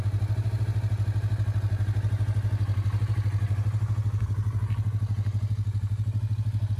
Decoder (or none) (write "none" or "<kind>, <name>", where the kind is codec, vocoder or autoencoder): none